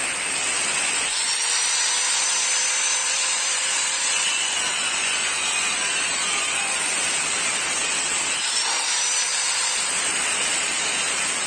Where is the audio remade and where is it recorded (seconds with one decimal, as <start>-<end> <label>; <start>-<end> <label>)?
0.0-0.7 recorded; 0.7-1.5 remade; 1.5-3.0 recorded; 3.0-7.0 remade; 7.0-11.5 recorded